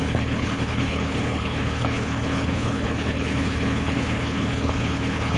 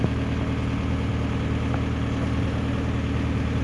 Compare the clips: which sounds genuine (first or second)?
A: second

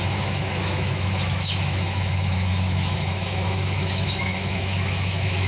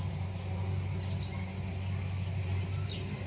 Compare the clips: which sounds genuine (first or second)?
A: second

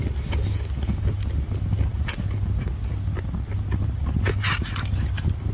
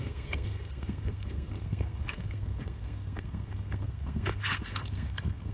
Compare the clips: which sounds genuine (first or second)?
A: first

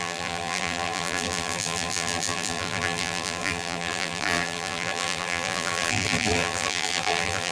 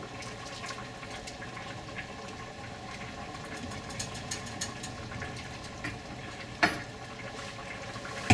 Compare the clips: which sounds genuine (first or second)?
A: second